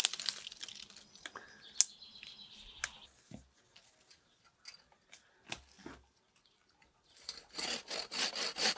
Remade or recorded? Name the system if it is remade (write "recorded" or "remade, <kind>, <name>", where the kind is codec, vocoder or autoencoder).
recorded